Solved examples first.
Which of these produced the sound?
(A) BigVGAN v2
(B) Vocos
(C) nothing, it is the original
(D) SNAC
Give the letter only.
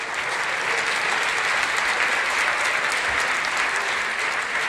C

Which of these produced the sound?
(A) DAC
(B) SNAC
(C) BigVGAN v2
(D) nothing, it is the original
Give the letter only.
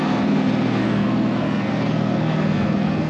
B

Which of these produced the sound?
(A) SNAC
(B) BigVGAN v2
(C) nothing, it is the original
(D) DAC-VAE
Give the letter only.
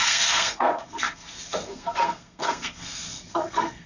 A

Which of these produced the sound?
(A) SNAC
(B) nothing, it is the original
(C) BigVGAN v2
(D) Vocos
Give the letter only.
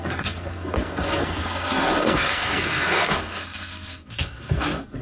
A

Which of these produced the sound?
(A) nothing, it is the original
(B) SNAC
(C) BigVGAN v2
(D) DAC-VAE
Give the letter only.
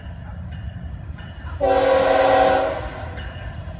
A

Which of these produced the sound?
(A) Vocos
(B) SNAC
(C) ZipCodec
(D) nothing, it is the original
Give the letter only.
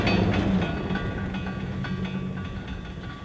D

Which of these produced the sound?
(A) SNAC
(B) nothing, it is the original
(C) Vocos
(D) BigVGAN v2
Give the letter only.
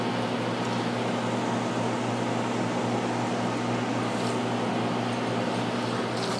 B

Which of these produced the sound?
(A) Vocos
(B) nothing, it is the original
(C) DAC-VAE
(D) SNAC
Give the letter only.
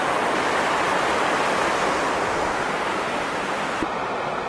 B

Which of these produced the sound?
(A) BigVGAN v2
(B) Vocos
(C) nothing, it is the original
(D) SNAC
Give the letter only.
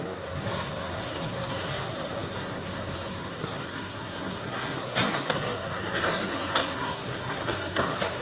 D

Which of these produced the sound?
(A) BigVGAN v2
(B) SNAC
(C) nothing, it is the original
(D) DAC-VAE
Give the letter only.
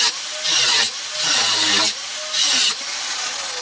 C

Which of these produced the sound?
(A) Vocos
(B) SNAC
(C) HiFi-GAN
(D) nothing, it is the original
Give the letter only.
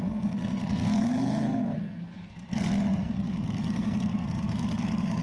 B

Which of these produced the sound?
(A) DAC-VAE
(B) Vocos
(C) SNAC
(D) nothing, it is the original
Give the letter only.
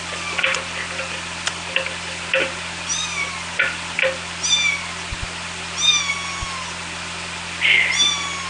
D